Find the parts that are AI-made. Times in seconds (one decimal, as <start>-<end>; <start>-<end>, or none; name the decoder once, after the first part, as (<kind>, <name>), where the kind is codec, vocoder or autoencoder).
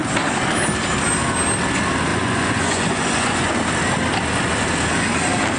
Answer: 2.1-3.5 (vocoder, Vocos)